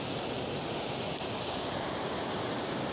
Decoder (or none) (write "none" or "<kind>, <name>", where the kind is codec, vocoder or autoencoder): none